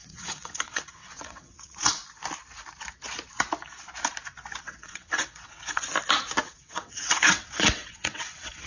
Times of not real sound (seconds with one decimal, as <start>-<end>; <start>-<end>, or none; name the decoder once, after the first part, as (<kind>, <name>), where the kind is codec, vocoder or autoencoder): 0.0-2.0 (vocoder, WaveNeXt); 4.6-5.9; 6.4-8.7